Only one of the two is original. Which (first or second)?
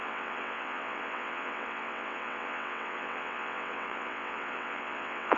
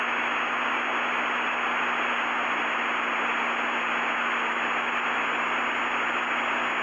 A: second